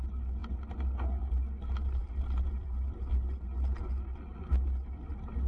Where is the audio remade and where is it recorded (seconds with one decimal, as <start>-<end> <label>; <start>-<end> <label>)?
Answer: 0.0-5.5 recorded